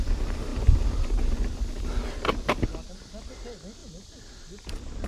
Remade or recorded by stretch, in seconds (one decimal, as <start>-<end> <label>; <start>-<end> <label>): 0.0-5.1 recorded